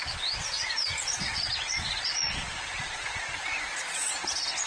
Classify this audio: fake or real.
fake